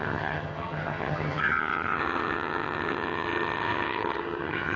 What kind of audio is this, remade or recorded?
remade